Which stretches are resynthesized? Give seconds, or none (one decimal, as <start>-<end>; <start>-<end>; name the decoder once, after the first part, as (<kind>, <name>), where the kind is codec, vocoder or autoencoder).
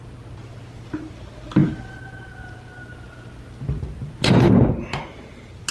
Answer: none